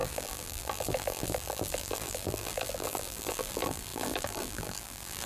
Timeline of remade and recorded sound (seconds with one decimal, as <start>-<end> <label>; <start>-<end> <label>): 0.0-5.3 remade